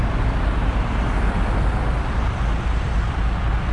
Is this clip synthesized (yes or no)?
no